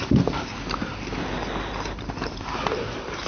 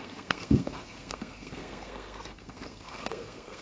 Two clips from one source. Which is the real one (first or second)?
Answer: first